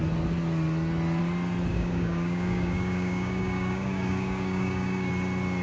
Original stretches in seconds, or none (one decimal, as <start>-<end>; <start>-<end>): 0.0-1.7; 5.1-5.6